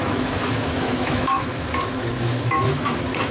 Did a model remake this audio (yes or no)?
yes